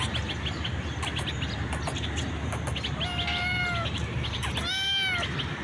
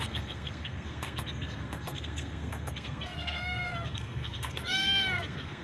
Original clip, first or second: first